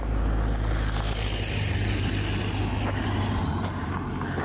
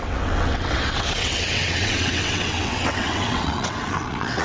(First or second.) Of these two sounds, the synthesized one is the second